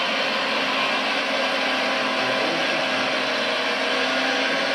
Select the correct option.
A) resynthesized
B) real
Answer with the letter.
B